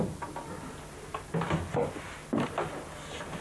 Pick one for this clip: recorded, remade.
recorded